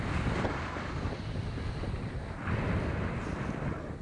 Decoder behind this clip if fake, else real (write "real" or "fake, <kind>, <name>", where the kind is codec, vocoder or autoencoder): fake, vocoder, BigVGAN v2